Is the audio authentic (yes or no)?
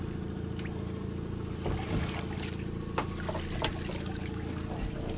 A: yes